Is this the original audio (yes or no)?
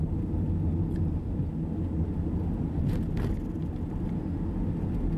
yes